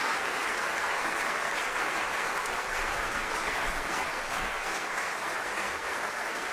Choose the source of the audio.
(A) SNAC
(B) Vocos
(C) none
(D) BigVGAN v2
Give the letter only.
A